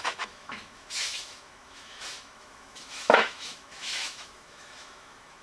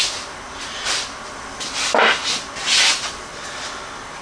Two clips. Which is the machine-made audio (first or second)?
first